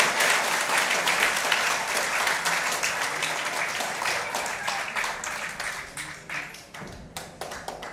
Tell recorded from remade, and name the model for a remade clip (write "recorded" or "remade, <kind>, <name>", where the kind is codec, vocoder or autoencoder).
recorded